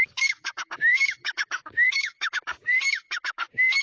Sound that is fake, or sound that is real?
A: fake